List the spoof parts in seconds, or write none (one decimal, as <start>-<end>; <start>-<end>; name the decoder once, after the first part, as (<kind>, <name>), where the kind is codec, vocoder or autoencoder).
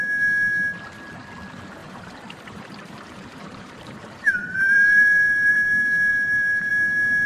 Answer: 1.8-5.5 (vocoder, BigVGAN v2); 6.1-6.7